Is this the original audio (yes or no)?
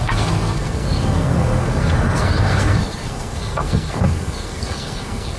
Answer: no